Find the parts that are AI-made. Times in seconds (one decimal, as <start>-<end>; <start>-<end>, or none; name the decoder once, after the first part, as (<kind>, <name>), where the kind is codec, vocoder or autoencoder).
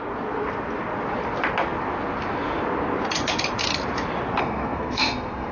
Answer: 4.4-5.5 (codec, SNAC)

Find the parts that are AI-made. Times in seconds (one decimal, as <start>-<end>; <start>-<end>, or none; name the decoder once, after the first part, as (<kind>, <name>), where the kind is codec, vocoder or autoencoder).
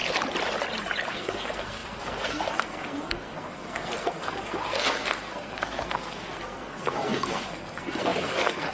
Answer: 1.1-8.7 (codec, SNAC)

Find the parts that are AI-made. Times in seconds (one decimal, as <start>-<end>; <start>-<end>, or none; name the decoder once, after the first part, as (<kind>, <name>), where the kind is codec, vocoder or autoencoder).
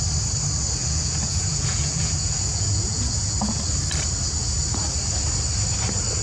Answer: 0.8-3.6 (vocoder, Vocos)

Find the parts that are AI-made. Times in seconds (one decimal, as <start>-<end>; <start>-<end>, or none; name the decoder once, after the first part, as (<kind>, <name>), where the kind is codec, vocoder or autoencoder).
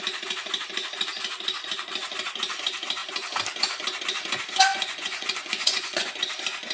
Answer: 4.7-6.1 (vocoder, Vocos)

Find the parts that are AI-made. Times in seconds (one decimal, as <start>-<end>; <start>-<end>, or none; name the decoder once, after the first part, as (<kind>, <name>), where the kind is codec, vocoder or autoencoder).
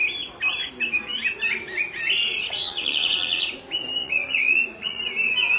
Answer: 2.3-3.6 (vocoder, Vocos); 4.0-5.0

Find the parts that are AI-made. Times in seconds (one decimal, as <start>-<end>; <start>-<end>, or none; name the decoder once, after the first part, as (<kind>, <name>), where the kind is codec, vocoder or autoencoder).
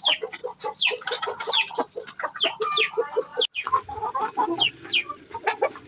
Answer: 0.4-1.5 (vocoder, BigVGAN v2)